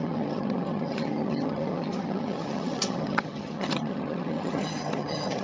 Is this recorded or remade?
remade